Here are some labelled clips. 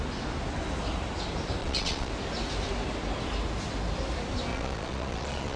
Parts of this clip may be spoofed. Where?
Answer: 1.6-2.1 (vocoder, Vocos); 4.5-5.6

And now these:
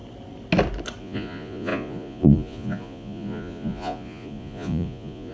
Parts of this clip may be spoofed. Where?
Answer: 1.0-5.3 (vocoder, Vocos)